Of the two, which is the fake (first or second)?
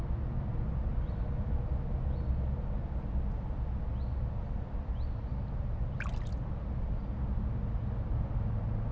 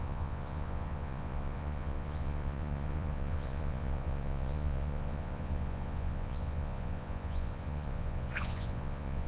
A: second